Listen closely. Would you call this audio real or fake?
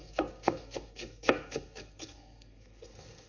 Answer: fake